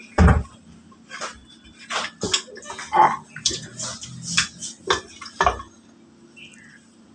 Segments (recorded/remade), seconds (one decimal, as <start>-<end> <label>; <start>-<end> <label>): 0.0-7.1 recorded